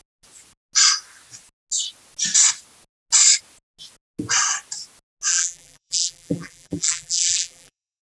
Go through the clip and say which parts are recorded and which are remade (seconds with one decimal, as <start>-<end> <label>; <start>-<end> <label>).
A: 0.0-5.3 recorded; 5.3-8.0 remade